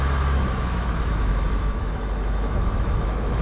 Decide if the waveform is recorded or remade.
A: remade